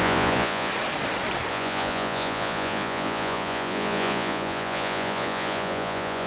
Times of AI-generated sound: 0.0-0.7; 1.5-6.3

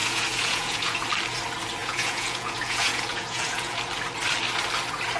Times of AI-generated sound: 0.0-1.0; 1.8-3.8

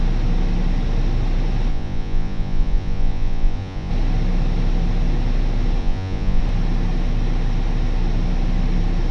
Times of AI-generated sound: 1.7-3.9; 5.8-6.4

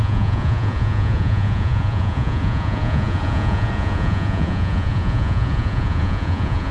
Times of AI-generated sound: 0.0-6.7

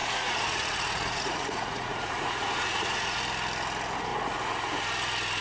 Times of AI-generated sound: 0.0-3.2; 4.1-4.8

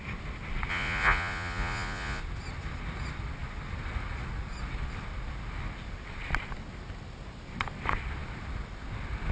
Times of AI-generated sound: 0.7-2.2

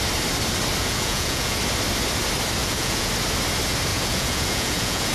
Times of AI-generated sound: 0.8-1.6; 2.6-3.1; 3.9-5.1